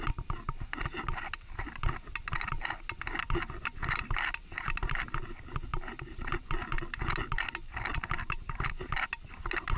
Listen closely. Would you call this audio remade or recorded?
recorded